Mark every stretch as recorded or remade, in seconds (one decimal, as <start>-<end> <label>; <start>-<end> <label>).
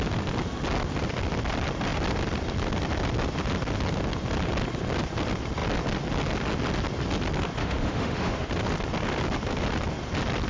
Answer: 0.0-7.6 recorded; 7.6-8.5 remade; 8.5-10.5 recorded